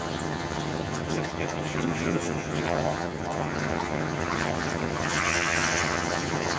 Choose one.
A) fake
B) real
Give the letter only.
A